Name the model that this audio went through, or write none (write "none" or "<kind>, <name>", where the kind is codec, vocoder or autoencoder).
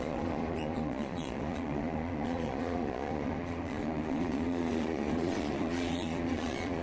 vocoder, Vocos